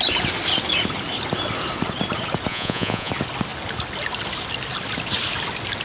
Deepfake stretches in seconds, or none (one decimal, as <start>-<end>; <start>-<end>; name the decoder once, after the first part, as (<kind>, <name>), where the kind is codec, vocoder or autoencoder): 2.5-3.1 (vocoder, Vocos)